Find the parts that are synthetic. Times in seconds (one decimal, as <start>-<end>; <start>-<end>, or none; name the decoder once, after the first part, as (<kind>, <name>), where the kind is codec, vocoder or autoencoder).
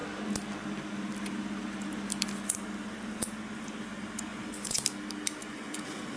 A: 4.3-4.8 (vocoder, Vocos); 5.4-6.2